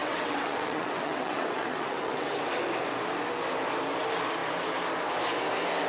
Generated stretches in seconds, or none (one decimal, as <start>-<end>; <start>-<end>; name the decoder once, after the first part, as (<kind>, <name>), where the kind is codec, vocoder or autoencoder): 0.0-2.3 (vocoder, WaveNeXt)